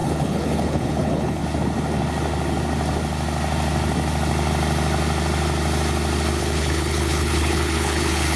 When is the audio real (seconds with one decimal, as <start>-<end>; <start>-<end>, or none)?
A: 1.4-6.4